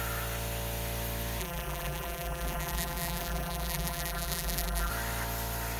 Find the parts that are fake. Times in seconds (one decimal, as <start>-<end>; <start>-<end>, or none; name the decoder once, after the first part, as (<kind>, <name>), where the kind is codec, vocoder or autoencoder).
1.4-4.9 (vocoder, BigVGAN v2)